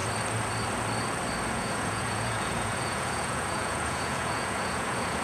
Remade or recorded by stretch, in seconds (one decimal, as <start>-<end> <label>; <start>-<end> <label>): 0.0-1.5 recorded; 1.5-5.2 remade